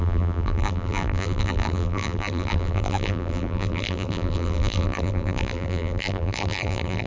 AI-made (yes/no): yes